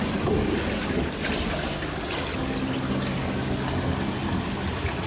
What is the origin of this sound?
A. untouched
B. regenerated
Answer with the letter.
A